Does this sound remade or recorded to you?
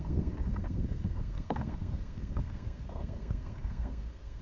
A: remade